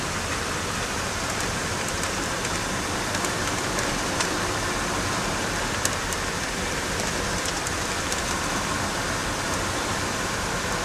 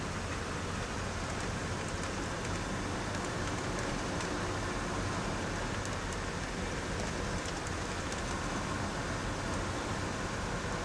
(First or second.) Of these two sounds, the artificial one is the first